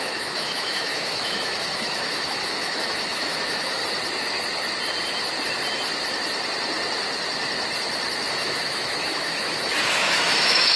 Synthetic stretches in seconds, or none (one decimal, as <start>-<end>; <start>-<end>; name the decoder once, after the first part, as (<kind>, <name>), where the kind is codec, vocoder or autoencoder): 0.0-3.8 (autoencoder, DAC-VAE); 8.3-10.8